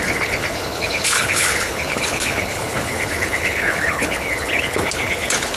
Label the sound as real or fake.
fake